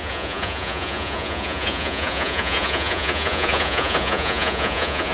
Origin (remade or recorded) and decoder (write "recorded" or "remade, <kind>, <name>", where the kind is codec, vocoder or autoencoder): remade, vocoder, Vocos